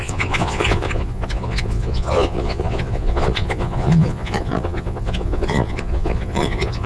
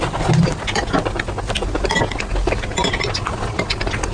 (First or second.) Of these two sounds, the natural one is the second